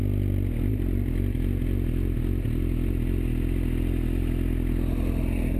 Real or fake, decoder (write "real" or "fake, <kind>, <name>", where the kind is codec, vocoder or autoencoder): real